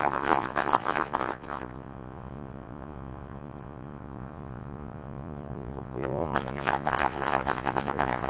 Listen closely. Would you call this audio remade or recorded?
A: remade